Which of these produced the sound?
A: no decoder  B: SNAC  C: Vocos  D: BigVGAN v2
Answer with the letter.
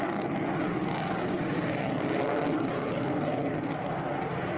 A